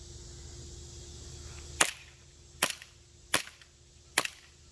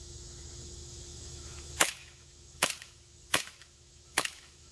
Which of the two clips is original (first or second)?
first